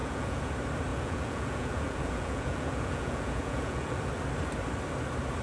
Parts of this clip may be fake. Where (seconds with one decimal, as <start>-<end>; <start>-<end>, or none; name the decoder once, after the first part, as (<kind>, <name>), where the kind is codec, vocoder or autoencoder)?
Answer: 0.0-0.5 (vocoder, Vocos); 0.9-4.1